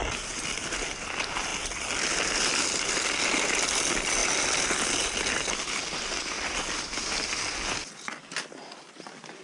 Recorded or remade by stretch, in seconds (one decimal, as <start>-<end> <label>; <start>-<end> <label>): 0.0-9.4 recorded